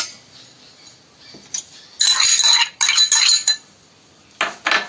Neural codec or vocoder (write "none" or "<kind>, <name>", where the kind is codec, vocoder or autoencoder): none